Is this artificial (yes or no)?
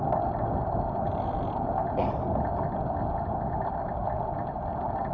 no